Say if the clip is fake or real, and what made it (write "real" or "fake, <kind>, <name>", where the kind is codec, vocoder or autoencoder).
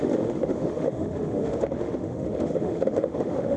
fake, autoencoder, DAC-VAE